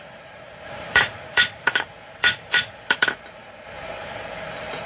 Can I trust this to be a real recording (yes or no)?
no